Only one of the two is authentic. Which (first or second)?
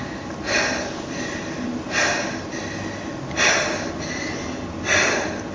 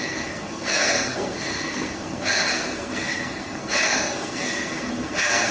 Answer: first